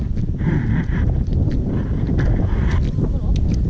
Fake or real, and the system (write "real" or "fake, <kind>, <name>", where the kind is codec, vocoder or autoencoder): real